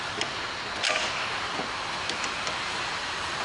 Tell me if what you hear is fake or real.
real